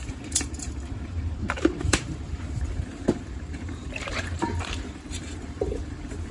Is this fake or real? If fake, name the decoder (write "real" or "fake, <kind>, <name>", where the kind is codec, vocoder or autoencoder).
fake, vocoder, BigVGAN v2